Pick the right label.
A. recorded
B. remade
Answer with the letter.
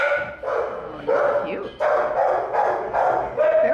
A